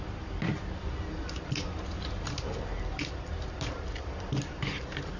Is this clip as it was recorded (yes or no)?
yes